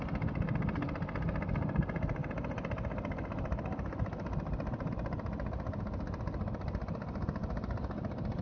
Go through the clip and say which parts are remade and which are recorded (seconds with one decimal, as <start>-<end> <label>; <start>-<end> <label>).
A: 0.0-8.4 recorded

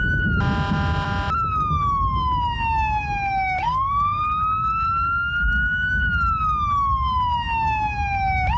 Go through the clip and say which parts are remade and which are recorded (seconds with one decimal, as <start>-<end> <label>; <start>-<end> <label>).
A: 0.0-3.6 recorded; 3.6-4.2 remade; 4.2-8.6 recorded

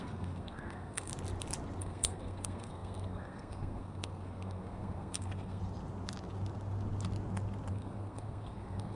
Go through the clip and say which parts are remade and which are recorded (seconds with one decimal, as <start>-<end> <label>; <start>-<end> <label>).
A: 0.0-1.1 remade; 1.1-1.8 recorded; 1.8-5.6 remade; 5.6-7.7 recorded; 7.7-9.0 remade

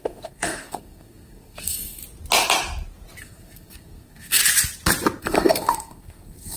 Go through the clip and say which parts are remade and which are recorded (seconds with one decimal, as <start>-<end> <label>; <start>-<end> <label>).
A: 0.0-2.0 remade; 2.0-3.2 recorded; 3.2-4.4 remade; 4.4-5.2 recorded; 5.2-6.6 remade

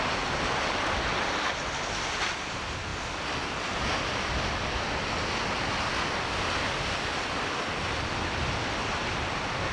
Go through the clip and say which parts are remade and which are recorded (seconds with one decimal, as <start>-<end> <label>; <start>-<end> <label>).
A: 0.0-9.7 recorded

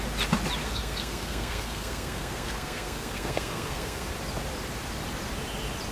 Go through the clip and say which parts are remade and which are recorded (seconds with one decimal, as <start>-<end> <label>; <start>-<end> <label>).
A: 0.0-0.6 recorded; 0.6-4.1 remade; 4.1-5.9 recorded

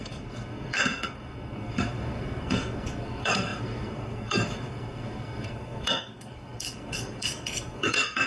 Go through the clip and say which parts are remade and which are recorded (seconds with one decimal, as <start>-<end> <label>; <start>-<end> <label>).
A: 0.0-8.3 remade

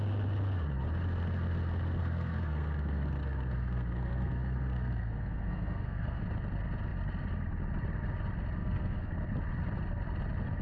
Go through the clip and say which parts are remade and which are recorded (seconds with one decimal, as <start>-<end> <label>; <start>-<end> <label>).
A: 0.0-2.0 recorded; 2.0-6.2 remade; 6.2-8.6 recorded; 8.6-9.1 remade; 9.1-10.6 recorded